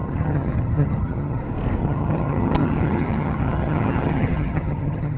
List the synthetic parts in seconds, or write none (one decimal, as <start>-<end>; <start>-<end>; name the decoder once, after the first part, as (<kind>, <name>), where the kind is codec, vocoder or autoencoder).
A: 0.0-1.4 (vocoder, HiFi-GAN); 1.8-5.2